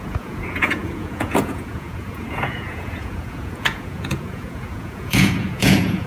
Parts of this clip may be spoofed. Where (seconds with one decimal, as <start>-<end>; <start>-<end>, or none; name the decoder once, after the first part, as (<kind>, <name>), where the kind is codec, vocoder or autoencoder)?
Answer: 0.0-6.1 (vocoder, Vocos)